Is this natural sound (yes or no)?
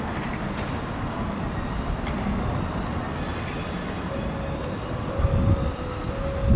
yes